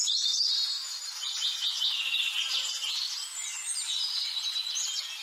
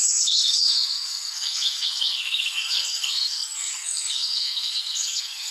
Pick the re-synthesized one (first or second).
second